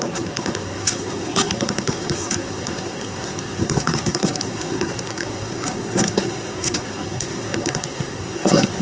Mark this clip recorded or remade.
remade